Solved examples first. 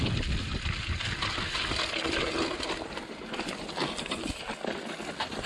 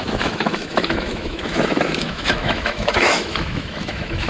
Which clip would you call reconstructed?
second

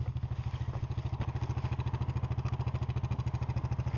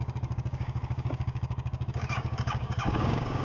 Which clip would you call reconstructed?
second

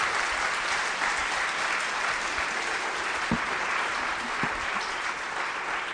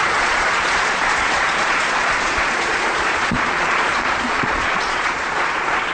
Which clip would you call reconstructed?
second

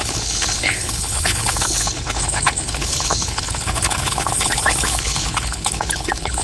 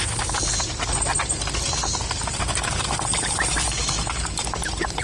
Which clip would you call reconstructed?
first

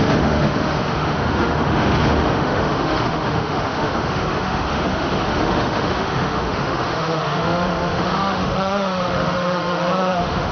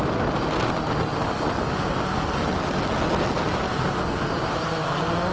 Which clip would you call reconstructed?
first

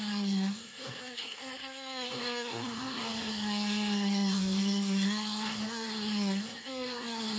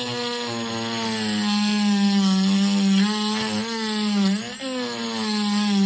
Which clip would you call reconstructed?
first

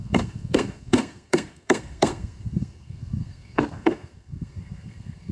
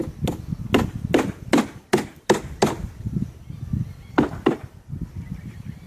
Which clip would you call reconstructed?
first